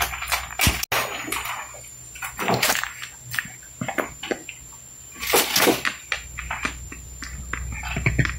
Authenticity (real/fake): real